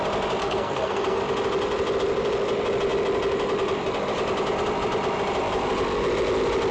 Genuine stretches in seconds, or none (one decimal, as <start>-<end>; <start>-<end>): 0.0-0.4; 1.2-6.7